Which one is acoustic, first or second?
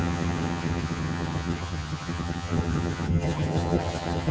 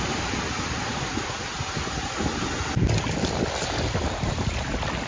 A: second